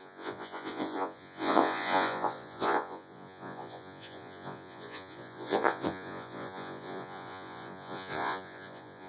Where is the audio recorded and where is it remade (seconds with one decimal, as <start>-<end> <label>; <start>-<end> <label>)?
0.0-9.1 remade